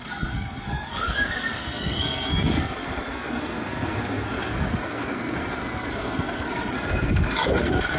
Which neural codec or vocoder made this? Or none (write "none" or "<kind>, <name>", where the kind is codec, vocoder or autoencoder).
codec, SNAC